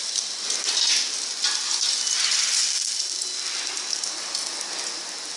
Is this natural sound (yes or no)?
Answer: yes